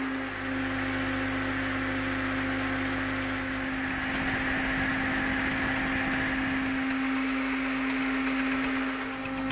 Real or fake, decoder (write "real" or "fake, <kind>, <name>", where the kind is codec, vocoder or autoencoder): real